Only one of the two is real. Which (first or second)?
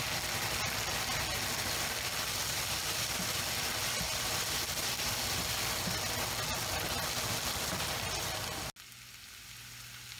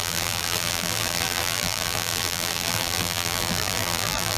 first